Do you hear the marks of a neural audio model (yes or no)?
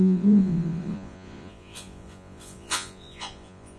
yes